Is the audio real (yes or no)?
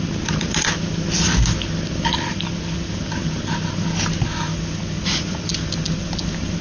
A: yes